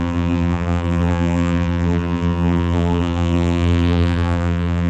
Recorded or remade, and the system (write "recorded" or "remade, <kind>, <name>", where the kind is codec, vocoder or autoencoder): remade, vocoder, BigVGAN v2